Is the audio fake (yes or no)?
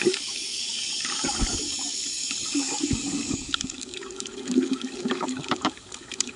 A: yes